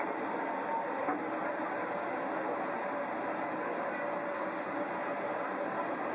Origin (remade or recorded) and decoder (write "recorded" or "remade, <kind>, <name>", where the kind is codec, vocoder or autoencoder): recorded